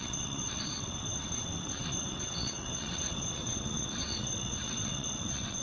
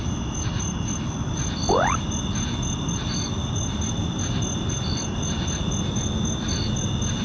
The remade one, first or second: first